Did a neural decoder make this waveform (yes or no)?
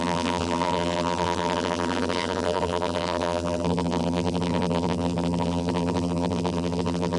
yes